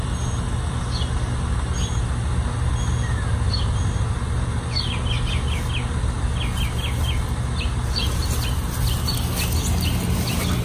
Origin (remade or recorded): recorded